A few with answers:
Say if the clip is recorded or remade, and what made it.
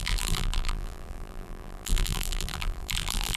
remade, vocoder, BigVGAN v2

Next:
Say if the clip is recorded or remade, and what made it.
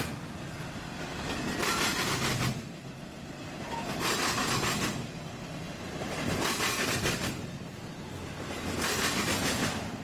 recorded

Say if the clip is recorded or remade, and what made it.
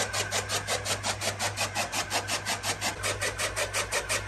recorded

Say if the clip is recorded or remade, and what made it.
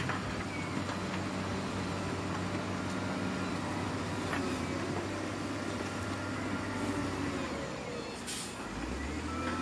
recorded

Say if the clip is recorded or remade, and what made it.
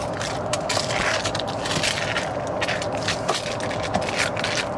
recorded